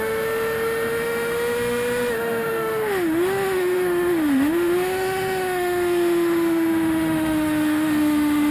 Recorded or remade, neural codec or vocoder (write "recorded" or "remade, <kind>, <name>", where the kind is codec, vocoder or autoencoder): remade, autoencoder, DAC-VAE